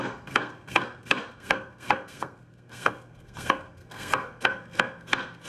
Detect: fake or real fake